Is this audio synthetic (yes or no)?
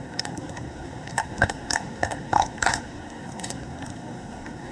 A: yes